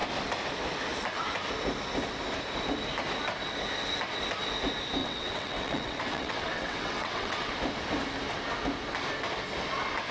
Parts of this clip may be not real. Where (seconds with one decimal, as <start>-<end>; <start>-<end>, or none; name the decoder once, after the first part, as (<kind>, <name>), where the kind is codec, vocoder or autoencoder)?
5.0-7.5 (vocoder, WaveNeXt)